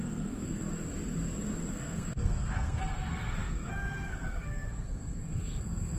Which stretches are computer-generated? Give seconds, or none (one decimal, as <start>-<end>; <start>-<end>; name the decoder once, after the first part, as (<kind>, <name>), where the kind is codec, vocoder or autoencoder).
0.0-0.7 (codec, SNAC); 1.7-6.0